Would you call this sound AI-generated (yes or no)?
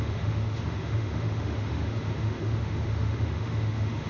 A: yes